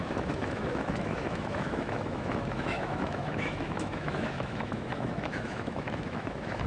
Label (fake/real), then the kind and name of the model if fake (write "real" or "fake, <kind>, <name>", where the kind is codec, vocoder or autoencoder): fake, autoencoder, DAC-VAE